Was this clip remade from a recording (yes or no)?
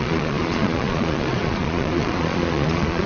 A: yes